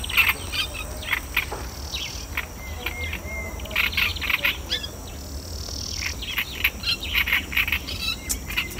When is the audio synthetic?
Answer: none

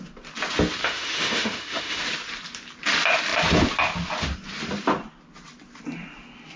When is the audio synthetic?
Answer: 0.8-2.0 (autoencoder, DAC-VAE)